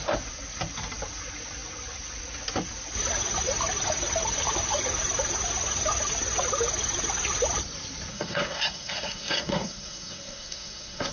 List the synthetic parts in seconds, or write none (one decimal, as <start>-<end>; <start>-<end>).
8.1-11.1